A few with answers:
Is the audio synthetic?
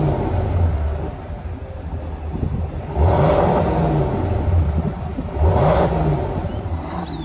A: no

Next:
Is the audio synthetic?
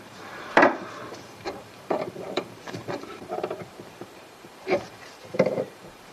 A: yes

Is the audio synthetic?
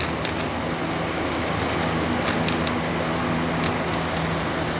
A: no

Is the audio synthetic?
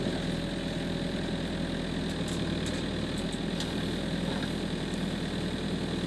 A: no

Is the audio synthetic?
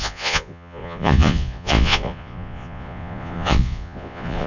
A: yes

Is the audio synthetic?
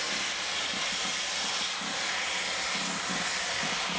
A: no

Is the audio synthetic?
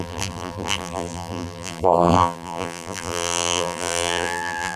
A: yes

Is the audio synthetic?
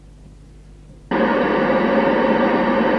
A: no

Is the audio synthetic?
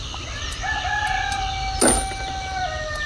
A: no